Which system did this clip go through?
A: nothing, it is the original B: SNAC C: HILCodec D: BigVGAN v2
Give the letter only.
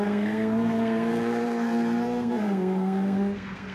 B